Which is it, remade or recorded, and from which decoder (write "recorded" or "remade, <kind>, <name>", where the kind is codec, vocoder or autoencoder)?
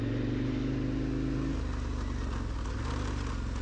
recorded